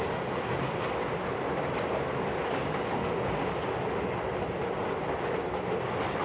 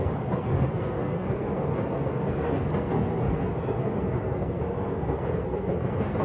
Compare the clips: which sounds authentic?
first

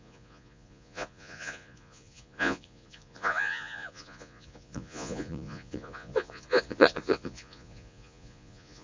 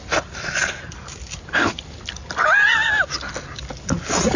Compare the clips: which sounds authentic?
second